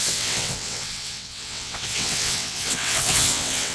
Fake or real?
fake